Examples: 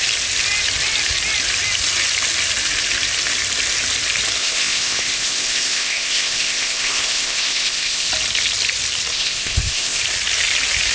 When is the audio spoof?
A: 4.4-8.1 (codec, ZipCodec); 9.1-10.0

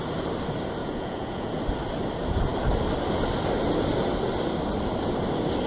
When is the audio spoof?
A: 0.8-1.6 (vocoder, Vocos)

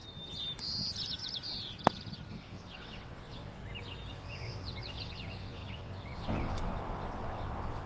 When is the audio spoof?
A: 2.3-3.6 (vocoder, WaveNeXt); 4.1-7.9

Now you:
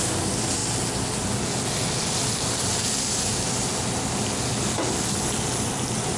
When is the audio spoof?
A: none

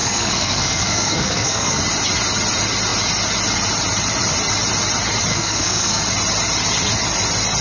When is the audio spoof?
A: 0.0-1.8 (codec, SNAC); 5.3-6.0

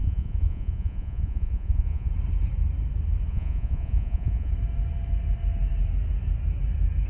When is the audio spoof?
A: 0.0-2.1 (vocoder, Vocos); 3.3-4.5

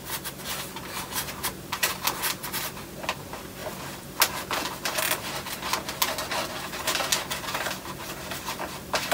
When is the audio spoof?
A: none